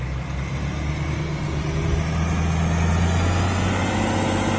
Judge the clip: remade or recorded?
recorded